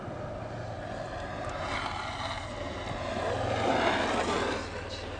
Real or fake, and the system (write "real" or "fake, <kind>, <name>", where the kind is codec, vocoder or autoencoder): real